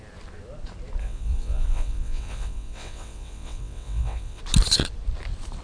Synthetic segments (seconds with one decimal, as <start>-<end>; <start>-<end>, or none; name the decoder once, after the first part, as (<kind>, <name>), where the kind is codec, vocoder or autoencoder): 1.0-4.4 (vocoder, WaveNeXt)

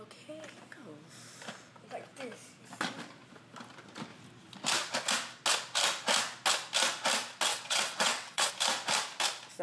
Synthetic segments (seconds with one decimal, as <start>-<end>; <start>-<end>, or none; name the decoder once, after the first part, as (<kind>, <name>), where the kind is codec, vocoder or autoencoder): 7.5-8.5 (vocoder, WaveNeXt)

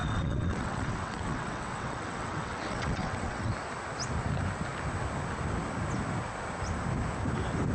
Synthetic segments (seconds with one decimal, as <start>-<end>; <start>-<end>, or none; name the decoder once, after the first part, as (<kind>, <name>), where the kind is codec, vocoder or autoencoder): 0.0-3.5 (vocoder, WaveNeXt)

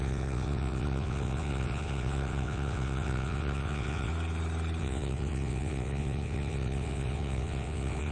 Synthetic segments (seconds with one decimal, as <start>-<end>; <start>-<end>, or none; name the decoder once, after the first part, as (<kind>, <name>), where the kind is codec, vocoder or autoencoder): 0.0-4.1 (vocoder, WaveNeXt); 4.8-8.1